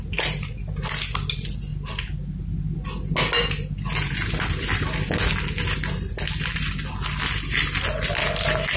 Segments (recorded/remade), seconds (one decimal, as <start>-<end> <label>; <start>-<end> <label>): 0.0-8.8 recorded